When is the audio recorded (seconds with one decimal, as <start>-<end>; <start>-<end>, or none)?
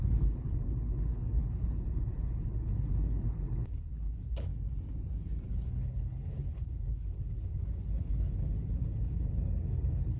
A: 4.5-5.5